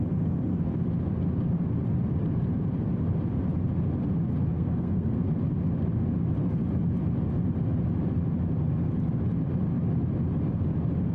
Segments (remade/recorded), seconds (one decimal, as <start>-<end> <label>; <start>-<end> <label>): 0.0-4.5 recorded; 4.5-5.3 remade; 5.3-11.1 recorded